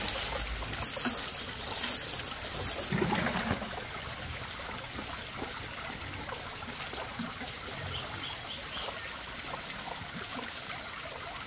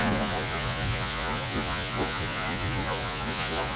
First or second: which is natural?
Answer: first